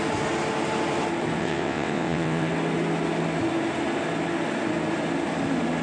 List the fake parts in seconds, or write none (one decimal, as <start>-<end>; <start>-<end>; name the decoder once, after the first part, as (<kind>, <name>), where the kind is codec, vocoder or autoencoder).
1.4-2.5 (vocoder, WaveNeXt)